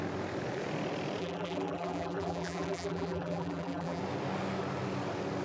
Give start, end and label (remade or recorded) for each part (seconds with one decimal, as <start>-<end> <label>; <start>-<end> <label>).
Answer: 0.0-1.2 recorded; 1.2-4.0 remade; 4.0-5.4 recorded

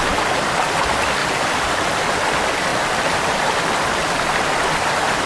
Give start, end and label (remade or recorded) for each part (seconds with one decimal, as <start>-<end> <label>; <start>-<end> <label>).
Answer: 0.0-1.2 recorded; 1.2-2.0 remade; 2.0-2.7 recorded; 2.7-3.5 remade; 3.5-5.3 recorded

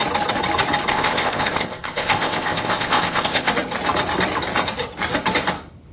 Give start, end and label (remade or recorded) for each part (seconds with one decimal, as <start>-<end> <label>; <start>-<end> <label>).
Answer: 0.0-0.9 recorded; 0.9-3.5 remade; 3.5-5.9 recorded

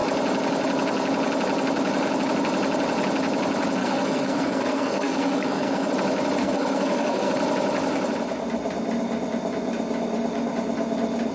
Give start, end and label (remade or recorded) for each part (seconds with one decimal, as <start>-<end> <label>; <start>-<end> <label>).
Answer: 0.0-3.8 recorded; 3.8-5.9 remade; 5.9-6.4 recorded; 6.4-7.3 remade; 7.3-11.3 recorded

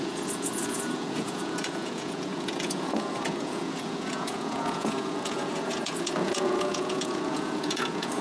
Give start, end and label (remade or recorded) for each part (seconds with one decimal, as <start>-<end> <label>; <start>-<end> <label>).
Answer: 0.0-8.2 remade

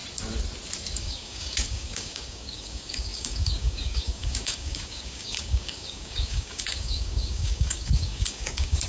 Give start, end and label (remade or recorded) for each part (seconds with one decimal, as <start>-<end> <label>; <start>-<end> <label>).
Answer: 0.0-1.0 recorded; 1.0-8.9 remade

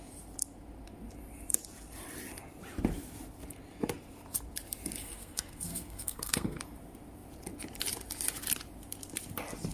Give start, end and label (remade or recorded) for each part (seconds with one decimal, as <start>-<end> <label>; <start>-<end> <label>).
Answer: 0.0-5.0 recorded; 5.0-6.6 remade; 6.6-9.7 recorded